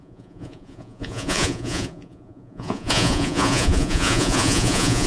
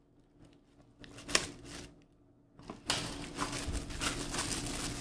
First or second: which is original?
second